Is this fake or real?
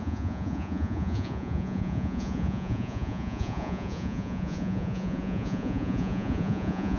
fake